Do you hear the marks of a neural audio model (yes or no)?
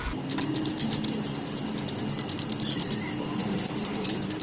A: no